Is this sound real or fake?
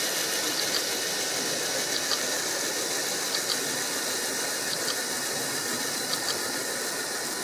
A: real